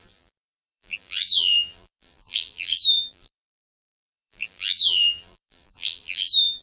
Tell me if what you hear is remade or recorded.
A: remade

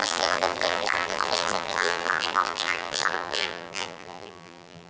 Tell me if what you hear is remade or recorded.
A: remade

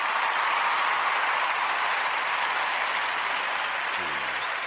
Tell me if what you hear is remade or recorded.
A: recorded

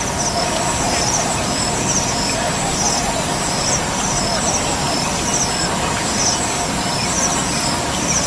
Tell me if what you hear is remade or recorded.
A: recorded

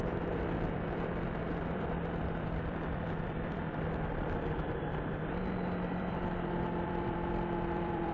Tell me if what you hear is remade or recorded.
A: remade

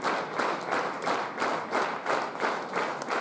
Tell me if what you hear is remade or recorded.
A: recorded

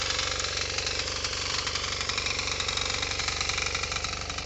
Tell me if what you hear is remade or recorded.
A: remade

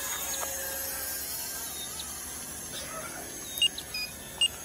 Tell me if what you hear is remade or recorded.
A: recorded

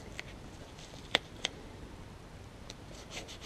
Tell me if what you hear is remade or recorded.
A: remade